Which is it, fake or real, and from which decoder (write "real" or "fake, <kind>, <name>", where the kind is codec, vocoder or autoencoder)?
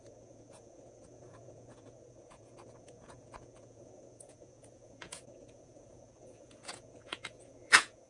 fake, vocoder, Vocos